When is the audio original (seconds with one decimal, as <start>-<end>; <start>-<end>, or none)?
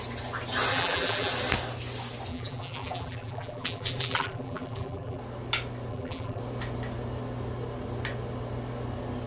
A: 0.0-0.7; 1.3-2.3; 5.2-5.9; 6.4-9.3